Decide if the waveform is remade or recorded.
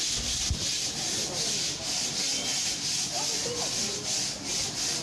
recorded